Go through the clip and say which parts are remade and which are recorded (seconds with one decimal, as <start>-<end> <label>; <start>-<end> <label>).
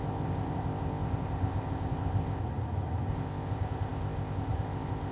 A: 0.0-2.4 remade; 2.4-3.1 recorded; 3.1-5.1 remade